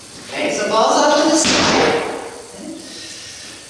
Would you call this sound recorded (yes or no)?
yes